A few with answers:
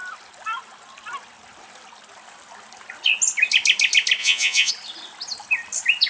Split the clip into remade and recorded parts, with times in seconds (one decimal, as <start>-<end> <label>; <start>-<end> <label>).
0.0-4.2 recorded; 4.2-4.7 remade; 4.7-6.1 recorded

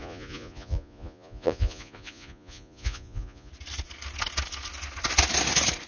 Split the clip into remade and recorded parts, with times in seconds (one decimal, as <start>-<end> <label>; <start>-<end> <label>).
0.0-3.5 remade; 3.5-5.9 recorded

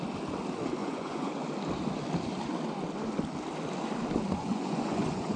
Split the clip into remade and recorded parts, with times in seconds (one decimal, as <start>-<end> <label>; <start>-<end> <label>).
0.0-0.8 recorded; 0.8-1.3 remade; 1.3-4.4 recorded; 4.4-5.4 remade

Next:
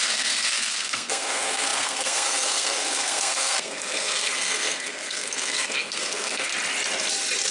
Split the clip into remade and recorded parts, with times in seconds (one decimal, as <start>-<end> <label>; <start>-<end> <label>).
0.0-6.5 remade; 6.5-7.5 recorded

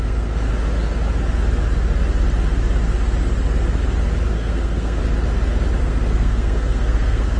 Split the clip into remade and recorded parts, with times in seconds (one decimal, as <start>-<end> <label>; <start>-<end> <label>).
0.0-0.5 remade; 0.5-4.3 recorded; 4.3-5.0 remade; 5.0-5.8 recorded; 5.8-7.4 remade

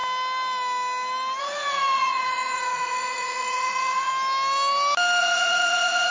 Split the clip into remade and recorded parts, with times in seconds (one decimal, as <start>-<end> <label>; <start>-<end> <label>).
0.0-1.4 recorded; 1.4-4.1 remade; 4.1-5.2 recorded; 5.2-6.1 remade

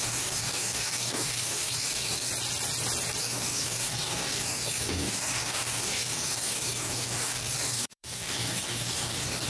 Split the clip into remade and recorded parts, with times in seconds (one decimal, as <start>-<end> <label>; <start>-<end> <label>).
0.0-2.3 remade; 2.3-3.2 recorded; 3.2-9.5 remade

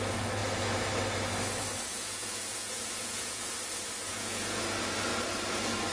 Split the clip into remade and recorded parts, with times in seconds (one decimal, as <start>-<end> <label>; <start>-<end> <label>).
0.0-1.9 recorded; 1.9-3.5 remade; 3.5-4.1 recorded; 4.1-4.6 remade; 4.6-5.9 recorded